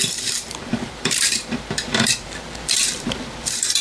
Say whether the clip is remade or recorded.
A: remade